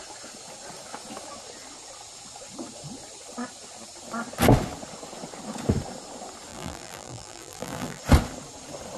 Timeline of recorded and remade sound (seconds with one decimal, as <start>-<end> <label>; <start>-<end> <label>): 0.0-6.5 recorded; 6.5-8.0 remade; 8.0-9.0 recorded